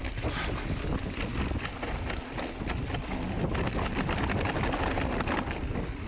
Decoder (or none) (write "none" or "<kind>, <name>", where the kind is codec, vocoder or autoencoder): none